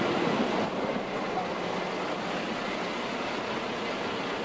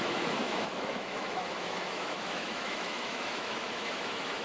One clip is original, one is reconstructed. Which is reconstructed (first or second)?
second